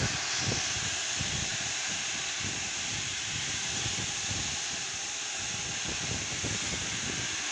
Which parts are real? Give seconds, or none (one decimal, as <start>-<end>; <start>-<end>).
0.0-2.9; 3.5-7.5